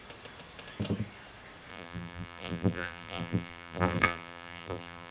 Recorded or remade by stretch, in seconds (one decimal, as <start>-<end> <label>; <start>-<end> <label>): 0.0-1.7 recorded; 1.7-5.1 remade